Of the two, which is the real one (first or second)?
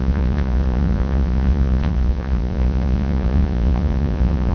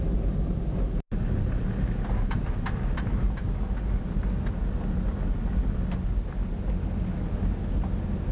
second